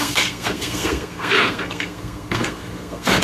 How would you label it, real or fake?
fake